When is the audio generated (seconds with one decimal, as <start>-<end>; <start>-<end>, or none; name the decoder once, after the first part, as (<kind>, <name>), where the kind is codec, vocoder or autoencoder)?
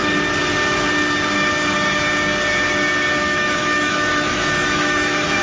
3.2-5.4 (autoencoder, DAC-VAE)